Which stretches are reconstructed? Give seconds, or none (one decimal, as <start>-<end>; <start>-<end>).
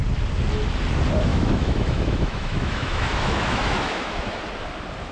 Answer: 1.3-4.4